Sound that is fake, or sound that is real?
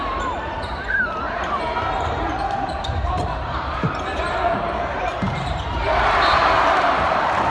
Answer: fake